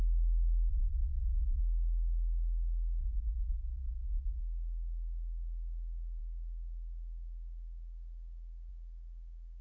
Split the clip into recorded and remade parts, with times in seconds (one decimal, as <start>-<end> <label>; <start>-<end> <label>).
0.0-0.7 recorded; 0.7-1.6 remade; 1.6-3.0 recorded; 3.0-4.4 remade; 4.4-9.6 recorded